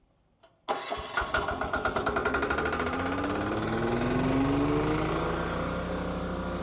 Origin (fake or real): real